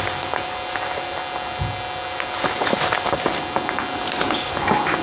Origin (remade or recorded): recorded